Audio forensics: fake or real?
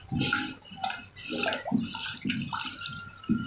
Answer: real